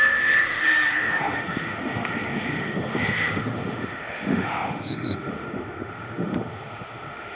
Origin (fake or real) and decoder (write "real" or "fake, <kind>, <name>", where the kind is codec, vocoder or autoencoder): fake, autoencoder, DAC-VAE